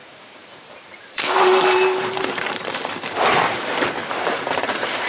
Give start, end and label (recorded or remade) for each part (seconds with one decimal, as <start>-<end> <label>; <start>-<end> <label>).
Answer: 0.0-3.1 remade; 3.1-4.0 recorded; 4.0-5.1 remade